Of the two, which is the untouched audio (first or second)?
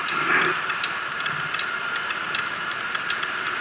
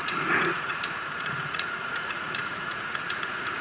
first